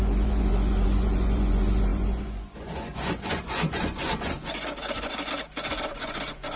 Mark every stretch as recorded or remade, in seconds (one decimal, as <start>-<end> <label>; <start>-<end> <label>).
0.0-6.6 remade